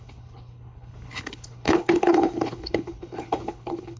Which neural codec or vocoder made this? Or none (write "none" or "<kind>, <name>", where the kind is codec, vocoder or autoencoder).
codec, HILCodec